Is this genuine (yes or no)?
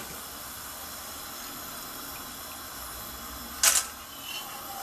yes